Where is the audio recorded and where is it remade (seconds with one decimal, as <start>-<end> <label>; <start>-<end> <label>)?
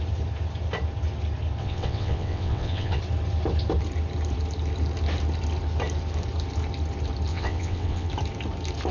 0.0-1.6 recorded; 1.6-3.0 remade; 3.0-7.3 recorded; 7.3-8.1 remade; 8.1-8.9 recorded